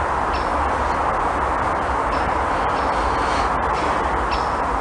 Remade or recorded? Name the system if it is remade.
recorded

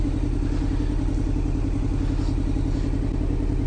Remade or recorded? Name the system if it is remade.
recorded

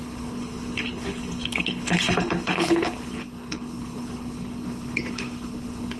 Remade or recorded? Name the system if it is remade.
remade, codec, HILCodec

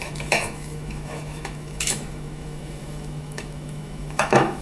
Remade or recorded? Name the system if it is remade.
remade, autoencoder, DAC-VAE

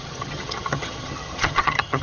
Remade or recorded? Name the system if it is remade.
remade, vocoder, HiFi-GAN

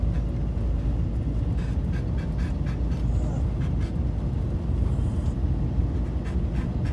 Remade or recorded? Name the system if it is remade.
recorded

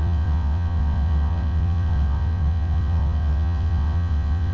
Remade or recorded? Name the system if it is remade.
remade, vocoder, WaveNeXt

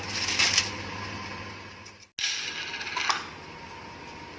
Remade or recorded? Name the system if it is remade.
recorded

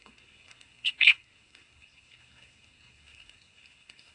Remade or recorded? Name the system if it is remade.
remade, codec, SNAC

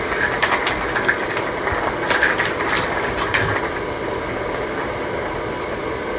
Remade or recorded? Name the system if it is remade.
recorded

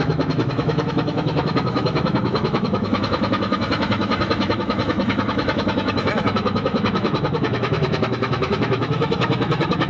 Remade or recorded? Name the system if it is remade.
remade, autoencoder, DAC-VAE